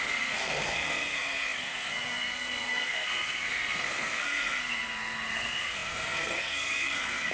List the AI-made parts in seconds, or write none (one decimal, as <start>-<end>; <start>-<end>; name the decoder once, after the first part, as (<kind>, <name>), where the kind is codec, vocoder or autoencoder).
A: 0.0-7.3 (codec, SNAC)